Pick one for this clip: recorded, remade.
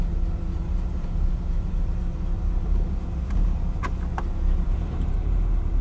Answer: remade